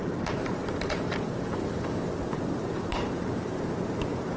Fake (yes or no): yes